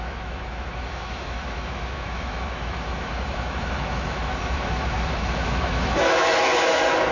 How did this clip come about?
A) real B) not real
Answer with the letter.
B